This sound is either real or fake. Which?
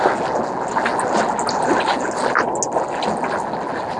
real